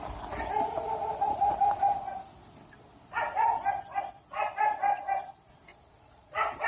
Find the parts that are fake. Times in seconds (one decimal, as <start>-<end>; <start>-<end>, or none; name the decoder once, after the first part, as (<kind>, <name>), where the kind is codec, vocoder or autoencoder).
5.7-6.7 (vocoder, Vocos)